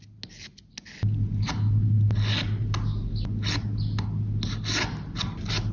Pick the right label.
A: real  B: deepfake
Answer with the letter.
A